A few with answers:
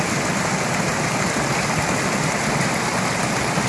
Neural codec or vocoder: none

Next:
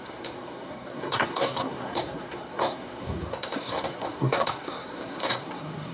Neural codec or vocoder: codec, SNAC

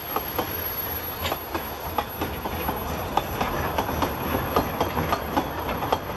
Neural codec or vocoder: none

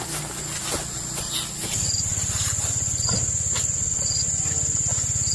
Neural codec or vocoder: none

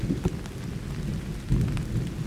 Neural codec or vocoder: none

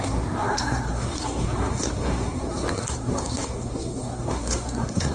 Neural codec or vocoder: codec, SNAC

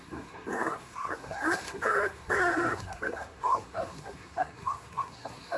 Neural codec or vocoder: codec, SNAC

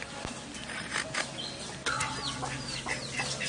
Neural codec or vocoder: none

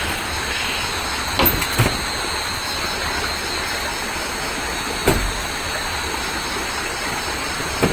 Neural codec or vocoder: none